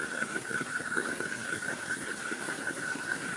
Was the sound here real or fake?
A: fake